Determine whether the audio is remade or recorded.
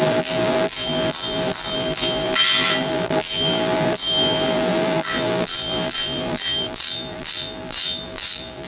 remade